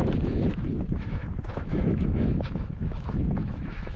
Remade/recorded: remade